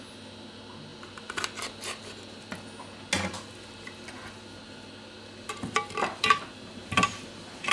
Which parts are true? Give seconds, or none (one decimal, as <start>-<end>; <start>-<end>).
0.0-7.7